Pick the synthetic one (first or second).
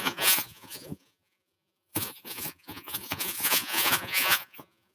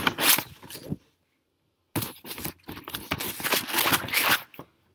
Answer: first